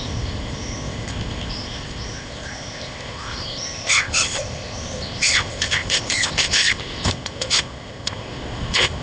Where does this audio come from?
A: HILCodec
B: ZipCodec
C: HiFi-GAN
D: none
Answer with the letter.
B